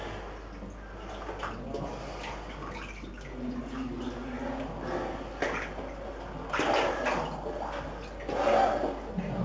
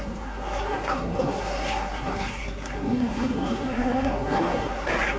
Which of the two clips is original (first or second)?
first